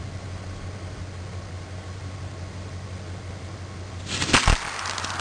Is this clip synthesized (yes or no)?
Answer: no